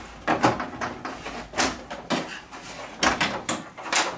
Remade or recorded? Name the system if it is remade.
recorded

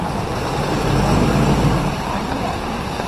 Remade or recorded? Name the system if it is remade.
recorded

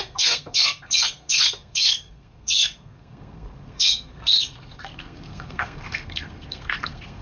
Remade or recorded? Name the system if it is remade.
remade, codec, SNAC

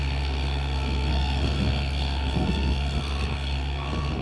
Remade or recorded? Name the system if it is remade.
remade, codec, SNAC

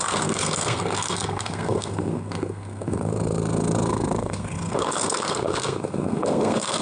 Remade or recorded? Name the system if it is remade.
remade, codec, SNAC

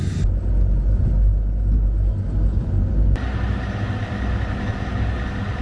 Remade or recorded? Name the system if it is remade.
recorded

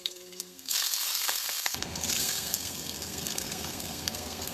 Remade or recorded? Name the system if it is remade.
remade, codec, SNAC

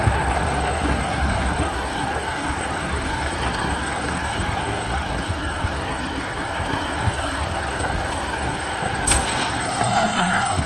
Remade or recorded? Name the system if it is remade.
remade, codec, SNAC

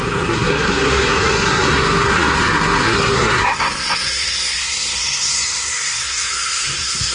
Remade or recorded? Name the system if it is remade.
remade, codec, SNAC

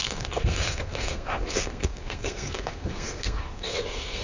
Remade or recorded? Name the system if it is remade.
remade, codec, SNAC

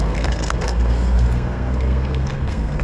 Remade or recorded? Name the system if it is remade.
remade, codec, SNAC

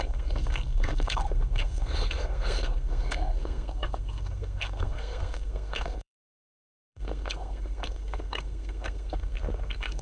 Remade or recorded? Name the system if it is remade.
remade, codec, SNAC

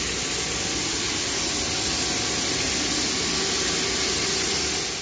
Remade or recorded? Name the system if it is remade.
recorded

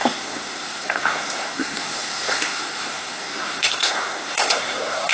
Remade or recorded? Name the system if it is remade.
remade, codec, SNAC